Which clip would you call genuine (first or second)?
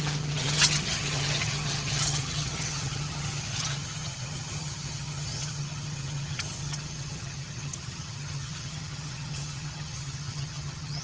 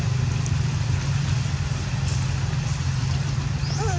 second